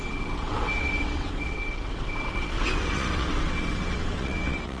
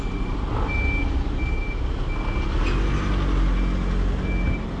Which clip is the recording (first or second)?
second